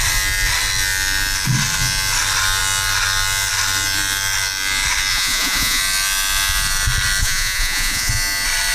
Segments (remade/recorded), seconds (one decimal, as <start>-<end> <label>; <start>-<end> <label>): 0.0-5.1 recorded; 5.1-5.8 remade; 5.8-7.2 recorded; 7.2-8.1 remade; 8.1-8.7 recorded

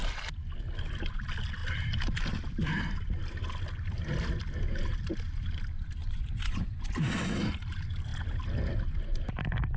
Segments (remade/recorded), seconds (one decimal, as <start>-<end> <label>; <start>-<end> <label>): 0.0-6.0 recorded; 6.0-7.0 remade; 7.0-9.8 recorded

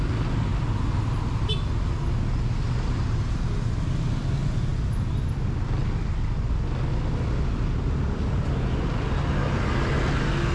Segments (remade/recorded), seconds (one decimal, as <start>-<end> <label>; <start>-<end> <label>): 0.0-10.5 recorded

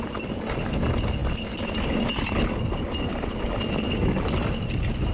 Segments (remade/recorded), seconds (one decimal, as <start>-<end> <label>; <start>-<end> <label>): 0.0-5.1 recorded